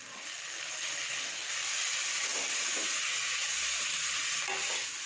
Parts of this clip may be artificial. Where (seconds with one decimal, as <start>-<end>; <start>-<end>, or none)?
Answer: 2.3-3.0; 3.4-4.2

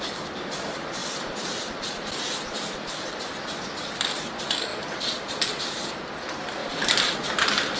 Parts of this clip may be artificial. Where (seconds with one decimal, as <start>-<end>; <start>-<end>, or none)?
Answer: 1.0-3.1; 6.6-7.1

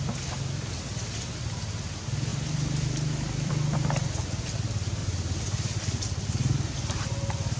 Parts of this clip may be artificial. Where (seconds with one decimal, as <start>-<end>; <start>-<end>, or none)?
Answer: 2.3-3.5; 4.0-4.6; 5.0-7.6